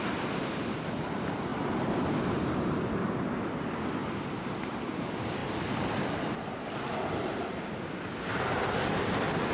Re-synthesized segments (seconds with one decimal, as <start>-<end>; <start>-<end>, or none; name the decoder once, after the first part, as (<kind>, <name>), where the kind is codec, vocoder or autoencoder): 1.5-3.3 (vocoder, BigVGAN v2); 4.0-4.5; 5.4-7.9